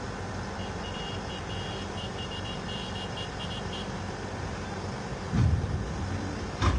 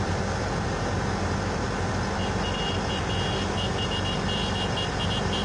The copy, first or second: first